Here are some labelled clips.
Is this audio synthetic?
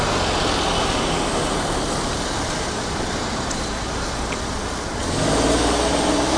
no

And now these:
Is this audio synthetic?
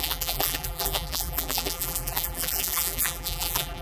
yes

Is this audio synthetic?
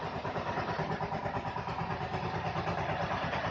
yes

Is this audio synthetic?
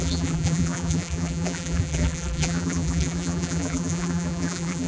yes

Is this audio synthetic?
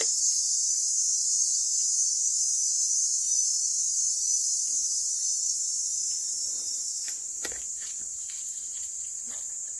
yes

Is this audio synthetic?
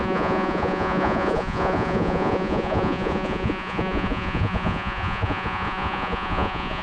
yes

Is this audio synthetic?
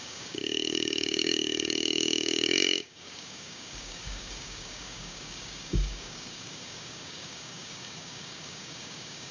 yes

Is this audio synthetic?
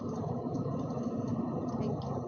no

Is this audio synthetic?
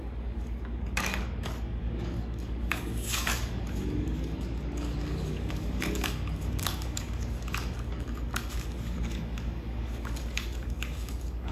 yes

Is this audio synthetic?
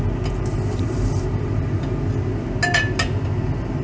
no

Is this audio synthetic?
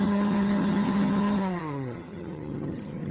yes